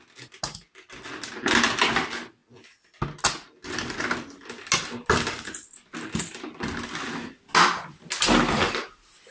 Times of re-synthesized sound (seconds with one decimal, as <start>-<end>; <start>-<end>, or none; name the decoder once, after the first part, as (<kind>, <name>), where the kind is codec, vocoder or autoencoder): none